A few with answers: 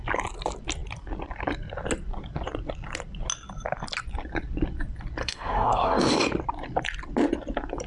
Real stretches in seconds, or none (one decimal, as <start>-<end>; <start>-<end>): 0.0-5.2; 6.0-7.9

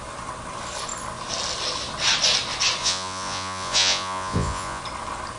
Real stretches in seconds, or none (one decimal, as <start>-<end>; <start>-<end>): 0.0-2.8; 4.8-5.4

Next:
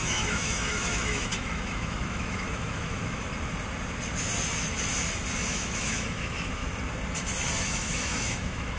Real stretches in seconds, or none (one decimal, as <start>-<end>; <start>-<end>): 3.3-5.5; 6.6-7.6

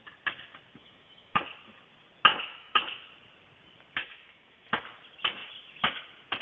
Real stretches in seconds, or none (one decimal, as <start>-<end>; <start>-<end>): 0.0-0.8; 1.4-2.3; 3.1-4.0; 4.7-6.4

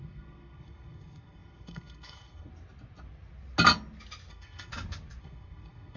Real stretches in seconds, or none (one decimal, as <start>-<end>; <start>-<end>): 2.5-4.3; 4.7-5.2

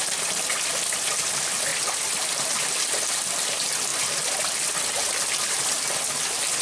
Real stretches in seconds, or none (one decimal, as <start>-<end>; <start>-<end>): 0.0-6.6